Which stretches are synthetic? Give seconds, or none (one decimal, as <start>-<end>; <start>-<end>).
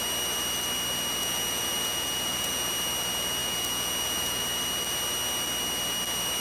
1.2-2.7; 3.4-4.4